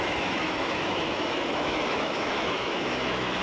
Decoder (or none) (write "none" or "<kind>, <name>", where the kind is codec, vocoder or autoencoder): autoencoder, DAC-VAE